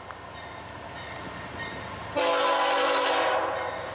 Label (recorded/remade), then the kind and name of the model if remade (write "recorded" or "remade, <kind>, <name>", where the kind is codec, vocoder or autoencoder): recorded